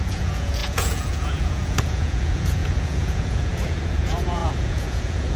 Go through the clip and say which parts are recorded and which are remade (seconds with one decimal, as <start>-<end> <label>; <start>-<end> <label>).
0.0-5.4 remade